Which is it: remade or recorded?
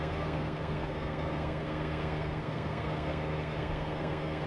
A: remade